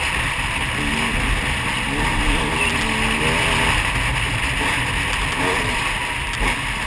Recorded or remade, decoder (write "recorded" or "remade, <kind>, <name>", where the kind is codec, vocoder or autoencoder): recorded